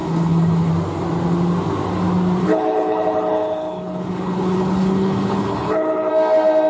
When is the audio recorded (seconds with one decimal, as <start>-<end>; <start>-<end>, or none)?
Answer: 0.7-2.4; 6.1-6.7